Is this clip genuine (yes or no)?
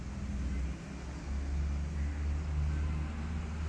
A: yes